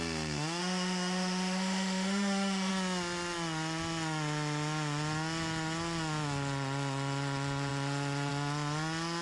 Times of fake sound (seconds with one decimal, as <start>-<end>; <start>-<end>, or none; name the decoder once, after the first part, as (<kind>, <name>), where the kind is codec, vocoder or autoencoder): 0.6-2.7 (autoencoder, DAC-VAE)